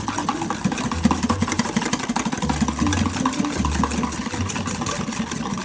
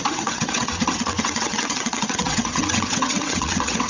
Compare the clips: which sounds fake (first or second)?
second